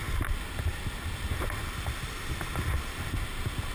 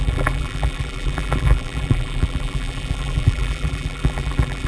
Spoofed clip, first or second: second